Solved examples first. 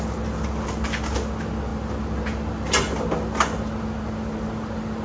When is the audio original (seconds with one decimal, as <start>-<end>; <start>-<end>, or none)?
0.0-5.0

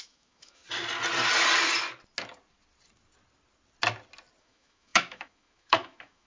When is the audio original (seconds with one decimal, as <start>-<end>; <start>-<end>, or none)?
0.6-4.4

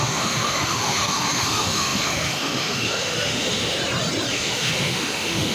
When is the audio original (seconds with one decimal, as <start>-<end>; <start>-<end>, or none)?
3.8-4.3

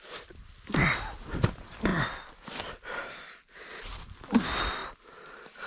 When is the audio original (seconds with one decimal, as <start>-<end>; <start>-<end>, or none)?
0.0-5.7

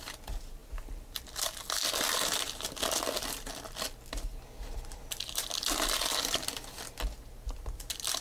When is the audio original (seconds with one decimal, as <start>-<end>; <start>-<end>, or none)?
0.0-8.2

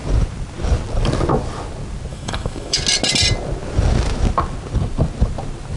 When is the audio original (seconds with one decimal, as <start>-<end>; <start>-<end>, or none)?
0.0-2.1; 2.8-5.8